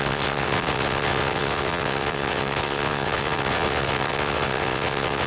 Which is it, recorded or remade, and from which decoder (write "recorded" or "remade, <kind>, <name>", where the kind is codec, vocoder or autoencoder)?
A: remade, vocoder, WaveNeXt